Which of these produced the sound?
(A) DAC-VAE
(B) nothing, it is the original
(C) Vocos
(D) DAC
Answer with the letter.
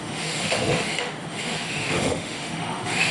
A